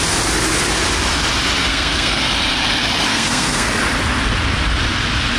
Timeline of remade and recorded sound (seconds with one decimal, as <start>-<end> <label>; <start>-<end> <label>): 0.0-1.7 recorded; 1.7-2.2 remade; 2.2-3.1 recorded; 3.1-3.7 remade; 3.7-5.4 recorded